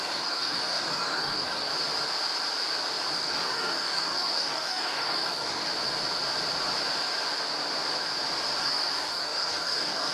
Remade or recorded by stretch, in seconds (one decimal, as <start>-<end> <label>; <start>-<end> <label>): 0.0-1.7 remade; 1.7-3.1 recorded; 3.1-5.7 remade; 5.7-8.6 recorded; 8.6-10.1 remade